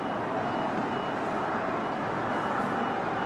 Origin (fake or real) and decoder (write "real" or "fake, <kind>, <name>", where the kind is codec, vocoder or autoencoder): real